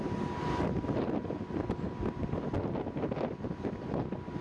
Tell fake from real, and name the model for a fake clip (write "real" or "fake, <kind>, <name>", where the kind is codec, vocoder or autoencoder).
real